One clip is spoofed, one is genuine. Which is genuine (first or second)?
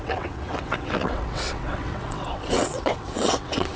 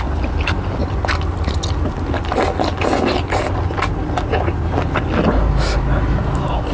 second